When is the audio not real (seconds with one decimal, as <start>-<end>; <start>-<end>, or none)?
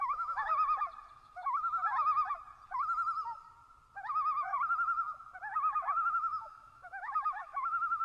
0.0-0.5; 1.1-1.6; 6.1-8.0